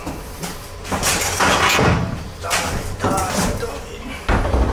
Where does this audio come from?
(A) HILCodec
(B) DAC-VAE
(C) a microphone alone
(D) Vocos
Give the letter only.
C